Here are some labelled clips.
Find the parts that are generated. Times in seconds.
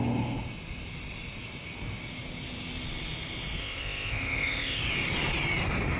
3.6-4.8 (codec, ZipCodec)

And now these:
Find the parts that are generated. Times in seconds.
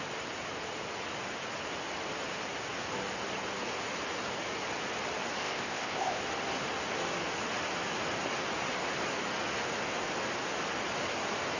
5.4-6.2 (codec, ZipCodec)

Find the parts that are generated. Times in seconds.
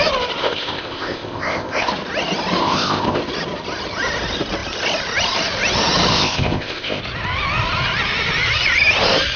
0.4-1.9 (codec, ZipCodec); 2.6-3.2; 6.1-7.0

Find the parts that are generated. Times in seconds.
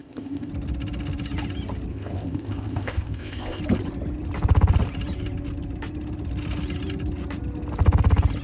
0.0-0.5 (codec, ZipCodec); 1.9-3.6